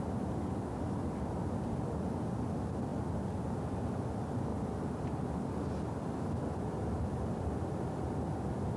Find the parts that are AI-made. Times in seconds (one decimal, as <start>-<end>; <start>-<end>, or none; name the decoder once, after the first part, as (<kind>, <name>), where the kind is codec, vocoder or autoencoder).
none